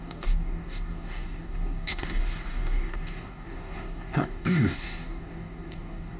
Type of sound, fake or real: fake